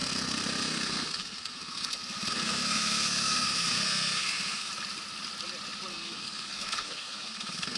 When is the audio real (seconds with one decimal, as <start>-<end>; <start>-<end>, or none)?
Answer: 4.7-5.9